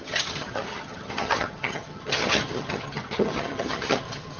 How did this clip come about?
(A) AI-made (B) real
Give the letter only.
A